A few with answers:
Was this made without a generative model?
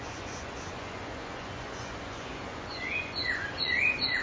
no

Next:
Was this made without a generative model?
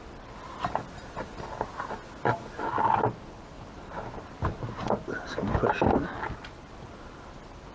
yes